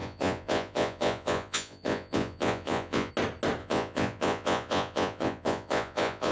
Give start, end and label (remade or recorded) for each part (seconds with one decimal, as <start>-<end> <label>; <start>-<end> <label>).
0.0-3.1 remade; 3.1-3.6 recorded; 3.6-6.3 remade